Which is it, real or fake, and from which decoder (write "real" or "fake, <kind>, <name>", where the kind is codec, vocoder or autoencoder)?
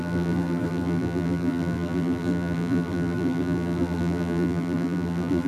fake, vocoder, BigVGAN v2